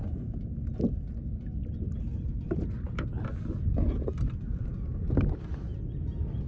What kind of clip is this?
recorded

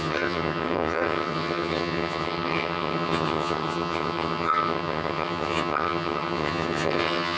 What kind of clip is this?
remade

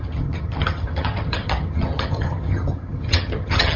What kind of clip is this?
remade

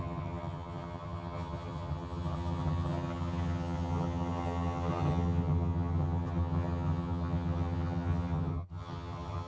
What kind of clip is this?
remade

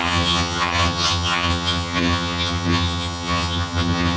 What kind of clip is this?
remade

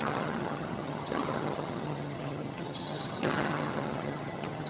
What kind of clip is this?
remade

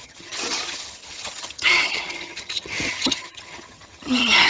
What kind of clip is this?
remade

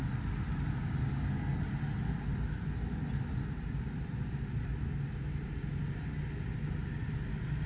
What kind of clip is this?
recorded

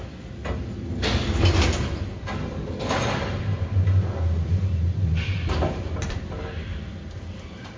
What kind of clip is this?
recorded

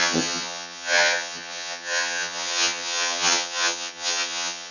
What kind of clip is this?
remade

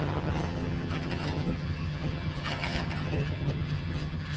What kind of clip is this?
remade